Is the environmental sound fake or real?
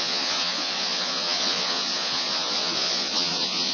fake